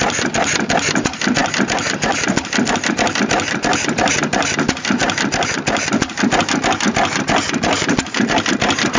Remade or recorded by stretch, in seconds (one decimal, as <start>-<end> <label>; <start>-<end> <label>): 0.0-9.0 recorded